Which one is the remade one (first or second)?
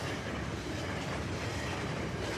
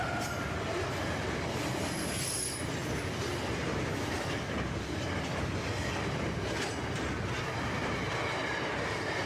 first